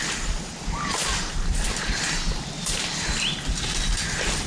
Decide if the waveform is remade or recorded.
recorded